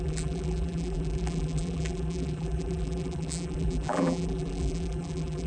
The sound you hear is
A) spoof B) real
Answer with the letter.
A